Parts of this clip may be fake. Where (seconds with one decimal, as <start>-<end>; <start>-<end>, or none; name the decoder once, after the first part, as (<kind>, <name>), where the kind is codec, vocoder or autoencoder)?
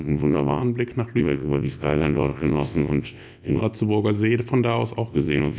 0.0-0.6 (vocoder, WaveNeXt); 1.2-3.6; 5.1-5.6